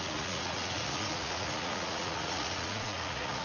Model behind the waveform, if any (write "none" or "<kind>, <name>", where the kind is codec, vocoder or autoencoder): vocoder, Vocos